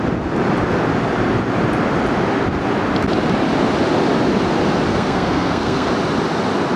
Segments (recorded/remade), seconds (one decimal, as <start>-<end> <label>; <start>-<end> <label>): 0.0-4.9 recorded; 4.9-5.9 remade; 5.9-6.8 recorded